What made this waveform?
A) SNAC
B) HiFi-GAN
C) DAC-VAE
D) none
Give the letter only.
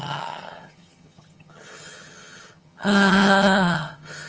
B